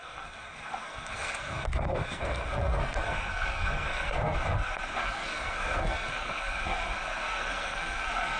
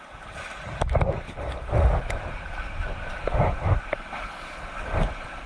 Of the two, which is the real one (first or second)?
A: second